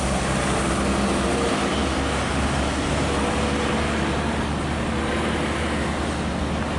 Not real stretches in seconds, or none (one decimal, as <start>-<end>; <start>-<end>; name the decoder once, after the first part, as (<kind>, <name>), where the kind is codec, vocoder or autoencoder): none